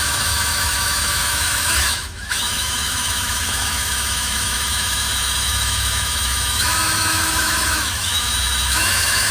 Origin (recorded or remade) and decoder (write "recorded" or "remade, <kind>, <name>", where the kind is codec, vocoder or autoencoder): remade, autoencoder, DAC-VAE